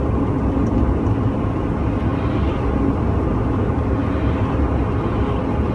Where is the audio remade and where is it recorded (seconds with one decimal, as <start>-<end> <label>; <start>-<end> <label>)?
0.0-5.7 recorded